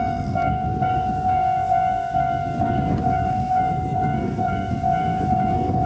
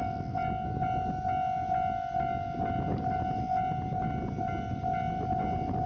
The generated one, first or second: first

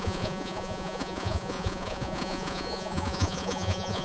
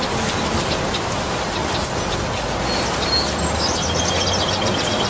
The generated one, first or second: first